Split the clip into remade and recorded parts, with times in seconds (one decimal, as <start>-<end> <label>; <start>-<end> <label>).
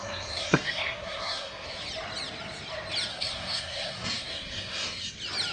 0.0-1.8 remade; 1.8-3.1 recorded; 3.1-5.1 remade; 5.1-5.5 recorded